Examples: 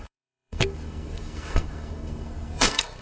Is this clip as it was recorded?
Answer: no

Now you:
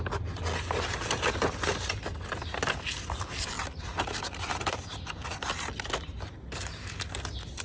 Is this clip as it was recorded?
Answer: yes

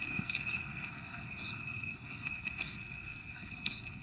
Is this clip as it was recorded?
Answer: no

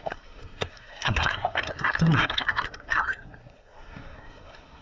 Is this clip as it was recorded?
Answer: no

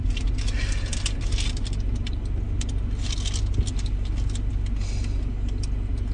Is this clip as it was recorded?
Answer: yes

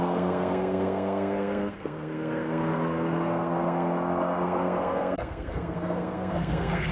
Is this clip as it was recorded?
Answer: no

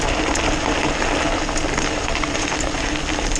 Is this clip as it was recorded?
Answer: yes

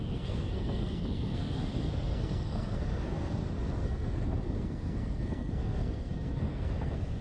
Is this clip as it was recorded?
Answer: no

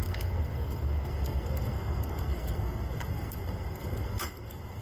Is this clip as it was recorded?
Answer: no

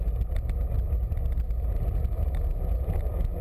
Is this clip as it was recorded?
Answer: yes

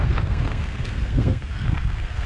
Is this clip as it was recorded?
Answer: no